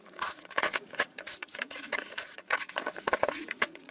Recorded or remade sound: remade